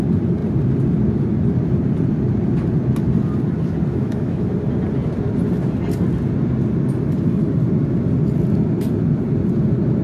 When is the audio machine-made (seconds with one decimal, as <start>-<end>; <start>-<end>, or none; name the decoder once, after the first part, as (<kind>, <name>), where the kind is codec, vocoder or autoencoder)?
3.9-4.5 (autoencoder, DAC-VAE)

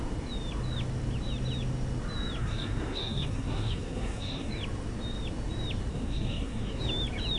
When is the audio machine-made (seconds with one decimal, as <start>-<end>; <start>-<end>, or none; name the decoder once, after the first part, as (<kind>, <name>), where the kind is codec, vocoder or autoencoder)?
2.4-4.5 (codec, SNAC); 5.9-6.8

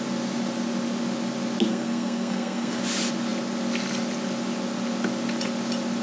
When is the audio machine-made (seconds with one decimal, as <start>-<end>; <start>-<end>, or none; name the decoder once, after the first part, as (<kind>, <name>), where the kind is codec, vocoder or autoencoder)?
1.7-2.8 (codec, SNAC)

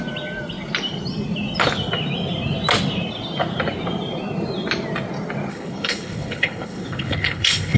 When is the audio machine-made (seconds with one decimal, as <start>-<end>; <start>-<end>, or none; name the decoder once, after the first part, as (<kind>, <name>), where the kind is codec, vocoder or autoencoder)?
5.5-7.8 (codec, HILCodec)

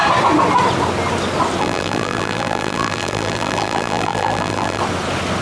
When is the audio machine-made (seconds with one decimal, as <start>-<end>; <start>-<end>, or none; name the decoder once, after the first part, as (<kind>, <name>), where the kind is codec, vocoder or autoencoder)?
1.6-4.8 (vocoder, BigVGAN v2)